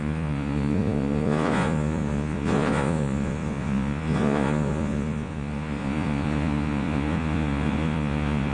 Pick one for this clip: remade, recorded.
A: remade